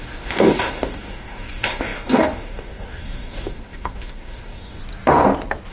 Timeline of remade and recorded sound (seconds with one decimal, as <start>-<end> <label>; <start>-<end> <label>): 0.0-4.8 remade; 4.8-5.7 recorded